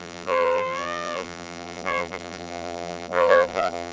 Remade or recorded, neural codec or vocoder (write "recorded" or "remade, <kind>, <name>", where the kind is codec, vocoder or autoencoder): remade, vocoder, BigVGAN v2